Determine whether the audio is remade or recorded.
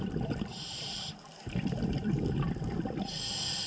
recorded